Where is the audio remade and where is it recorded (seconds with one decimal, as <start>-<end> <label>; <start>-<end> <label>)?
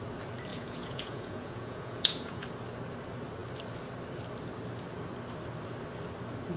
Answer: 0.0-0.5 recorded; 0.5-2.4 remade; 2.4-6.6 recorded